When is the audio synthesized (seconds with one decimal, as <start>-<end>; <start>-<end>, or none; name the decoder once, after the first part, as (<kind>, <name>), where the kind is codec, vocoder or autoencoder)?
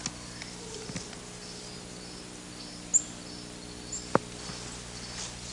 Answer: none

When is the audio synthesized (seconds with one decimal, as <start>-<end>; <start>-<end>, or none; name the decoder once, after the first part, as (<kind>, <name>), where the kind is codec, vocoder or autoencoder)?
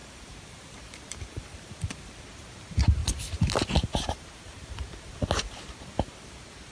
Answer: 0.0-2.2 (vocoder, BigVGAN v2); 3.0-4.7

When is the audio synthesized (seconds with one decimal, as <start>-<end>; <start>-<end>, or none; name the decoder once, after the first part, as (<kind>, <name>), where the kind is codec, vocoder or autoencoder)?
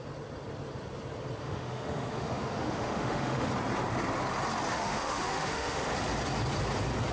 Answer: 1.4-3.5 (autoencoder, DAC-VAE); 4.7-5.9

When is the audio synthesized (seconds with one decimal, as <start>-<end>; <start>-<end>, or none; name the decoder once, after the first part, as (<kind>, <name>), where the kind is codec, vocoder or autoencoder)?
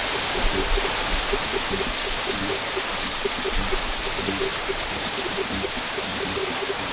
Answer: 0.0-4.1 (vocoder, BigVGAN v2); 4.5-5.5; 6.1-6.9